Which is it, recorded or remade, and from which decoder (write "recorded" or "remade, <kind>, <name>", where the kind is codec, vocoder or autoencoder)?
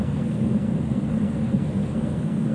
remade, codec, SNAC